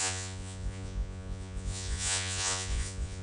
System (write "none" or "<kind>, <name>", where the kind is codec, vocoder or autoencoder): vocoder, Vocos